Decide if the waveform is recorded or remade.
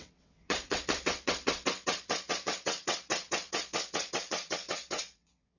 remade